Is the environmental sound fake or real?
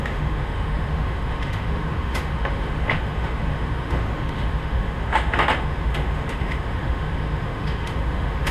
fake